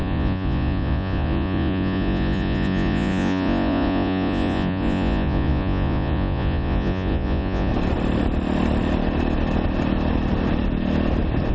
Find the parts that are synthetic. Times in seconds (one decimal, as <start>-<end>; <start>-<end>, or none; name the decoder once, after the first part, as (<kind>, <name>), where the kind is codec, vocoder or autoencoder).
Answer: 0.0-7.7 (vocoder, Vocos)